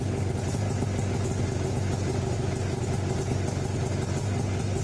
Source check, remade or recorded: recorded